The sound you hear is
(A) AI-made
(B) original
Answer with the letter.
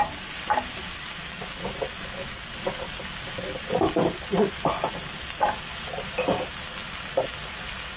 B